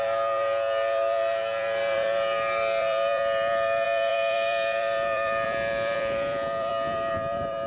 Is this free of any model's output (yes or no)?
no